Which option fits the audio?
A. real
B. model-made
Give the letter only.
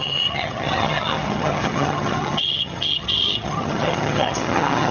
B